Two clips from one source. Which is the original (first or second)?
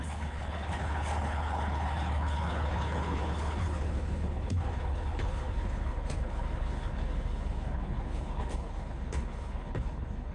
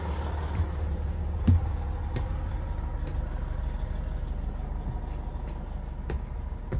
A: second